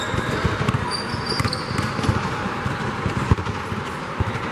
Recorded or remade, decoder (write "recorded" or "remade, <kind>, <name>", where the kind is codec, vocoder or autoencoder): recorded